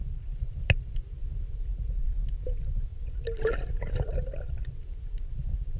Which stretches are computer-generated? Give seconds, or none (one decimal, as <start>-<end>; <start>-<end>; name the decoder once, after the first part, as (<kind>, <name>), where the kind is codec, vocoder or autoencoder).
none